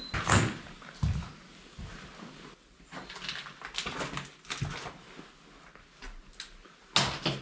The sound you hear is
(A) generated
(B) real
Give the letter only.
B